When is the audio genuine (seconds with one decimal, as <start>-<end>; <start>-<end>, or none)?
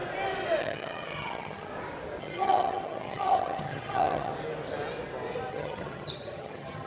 0.0-0.6; 1.7-2.2; 4.3-5.5